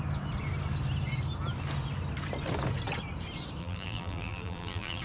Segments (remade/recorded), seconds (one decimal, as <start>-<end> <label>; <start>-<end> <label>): 0.0-3.6 recorded; 3.6-5.0 remade